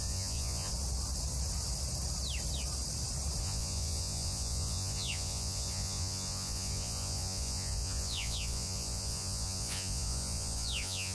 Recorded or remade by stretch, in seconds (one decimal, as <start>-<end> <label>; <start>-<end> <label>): 0.0-0.7 remade; 0.7-3.4 recorded; 3.4-11.1 remade